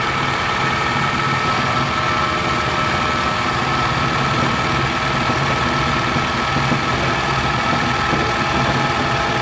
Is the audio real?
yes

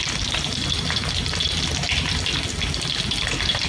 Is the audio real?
yes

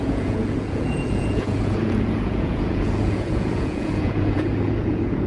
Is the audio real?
no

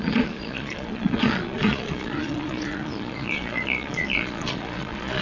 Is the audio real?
no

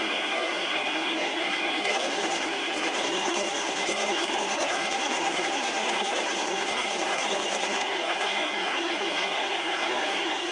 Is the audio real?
no